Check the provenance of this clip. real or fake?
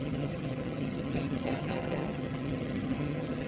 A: fake